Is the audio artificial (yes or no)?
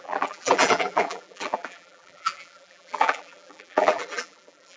yes